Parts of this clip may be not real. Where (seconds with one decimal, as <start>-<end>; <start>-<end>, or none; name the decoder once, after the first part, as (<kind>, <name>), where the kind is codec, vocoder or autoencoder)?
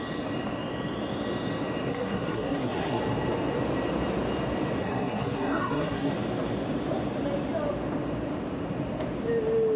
1.9-3.0 (codec, SNAC); 4.8-6.1